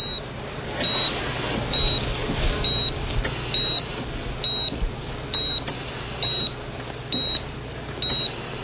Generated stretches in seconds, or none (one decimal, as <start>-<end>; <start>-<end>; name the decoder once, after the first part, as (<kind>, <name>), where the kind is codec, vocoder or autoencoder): none